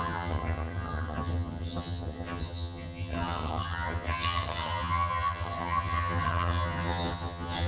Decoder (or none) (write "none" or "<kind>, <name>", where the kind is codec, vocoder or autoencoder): vocoder, HiFi-GAN